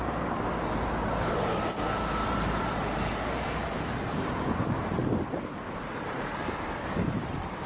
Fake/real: fake